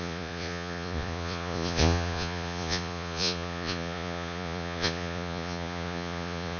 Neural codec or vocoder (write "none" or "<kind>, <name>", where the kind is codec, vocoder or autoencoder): vocoder, Vocos